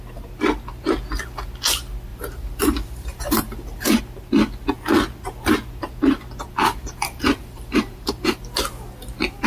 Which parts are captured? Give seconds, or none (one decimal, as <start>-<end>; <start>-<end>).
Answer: 0.0-2.1; 4.0-6.8; 8.4-9.5